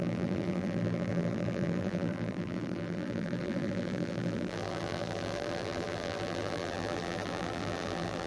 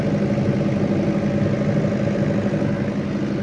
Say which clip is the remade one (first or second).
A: first